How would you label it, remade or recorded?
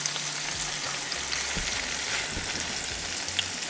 recorded